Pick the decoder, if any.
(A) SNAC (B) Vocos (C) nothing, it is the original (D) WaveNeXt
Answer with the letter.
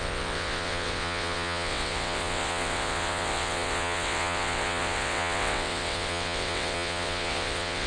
D